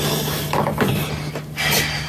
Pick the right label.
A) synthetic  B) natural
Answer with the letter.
B